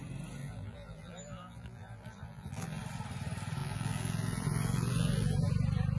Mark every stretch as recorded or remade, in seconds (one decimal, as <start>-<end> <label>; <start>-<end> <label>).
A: 0.0-0.4 recorded; 0.4-2.8 remade; 2.8-3.6 recorded; 3.6-5.5 remade; 5.5-6.0 recorded